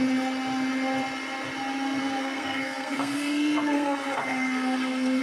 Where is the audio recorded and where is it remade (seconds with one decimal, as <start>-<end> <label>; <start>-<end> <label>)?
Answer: 0.0-2.0 recorded; 2.0-5.2 remade